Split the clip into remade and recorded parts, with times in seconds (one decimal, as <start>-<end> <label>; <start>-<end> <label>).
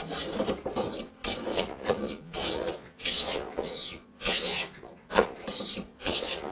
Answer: 0.0-1.5 recorded; 1.5-5.4 remade; 5.4-5.9 recorded; 5.9-6.5 remade